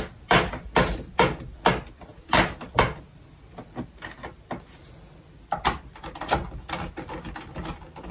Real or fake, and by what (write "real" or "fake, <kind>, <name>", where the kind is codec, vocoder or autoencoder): real